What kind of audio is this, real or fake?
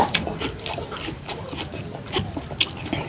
real